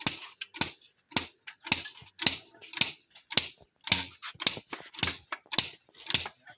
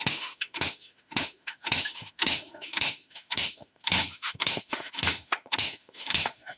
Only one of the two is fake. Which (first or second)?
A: second